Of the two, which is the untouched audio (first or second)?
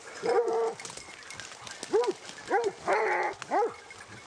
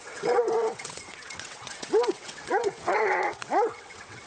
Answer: first